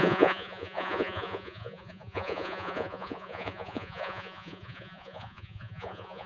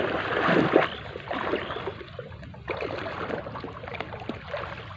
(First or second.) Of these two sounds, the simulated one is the first